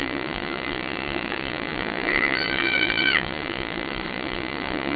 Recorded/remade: remade